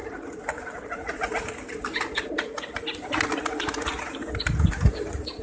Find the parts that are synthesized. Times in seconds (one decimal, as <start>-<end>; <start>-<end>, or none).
none